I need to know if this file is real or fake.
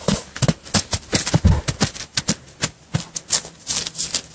real